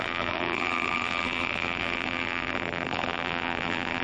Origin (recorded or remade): remade